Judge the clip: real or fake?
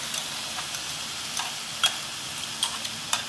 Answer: fake